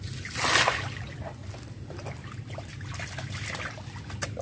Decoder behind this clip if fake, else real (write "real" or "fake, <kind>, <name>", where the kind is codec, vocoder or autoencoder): real